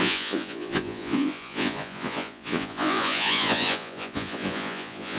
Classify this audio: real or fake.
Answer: fake